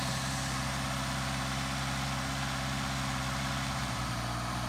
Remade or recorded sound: recorded